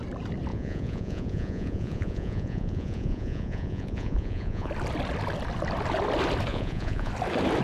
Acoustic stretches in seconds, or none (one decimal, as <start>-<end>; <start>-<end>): 0.0-0.5; 4.7-6.5; 7.1-7.6

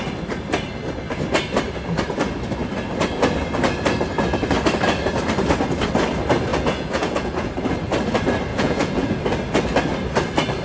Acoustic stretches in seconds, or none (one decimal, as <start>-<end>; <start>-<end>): 0.0-6.5; 7.5-8.5; 9.2-10.6

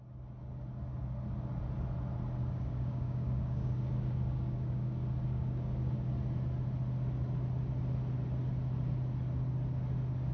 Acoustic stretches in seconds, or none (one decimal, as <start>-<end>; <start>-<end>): 0.0-2.4; 6.1-10.3